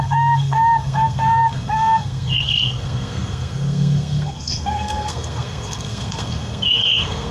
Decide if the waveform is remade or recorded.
remade